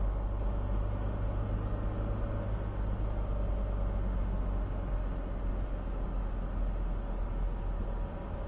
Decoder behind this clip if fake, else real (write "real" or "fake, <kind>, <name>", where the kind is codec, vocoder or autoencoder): real